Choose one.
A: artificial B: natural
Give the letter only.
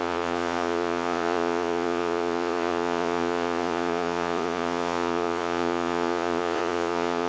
A